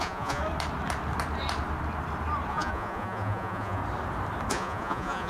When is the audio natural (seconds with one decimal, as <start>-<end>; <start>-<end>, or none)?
0.4-2.5; 3.8-4.5